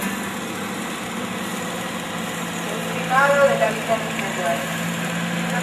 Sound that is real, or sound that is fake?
real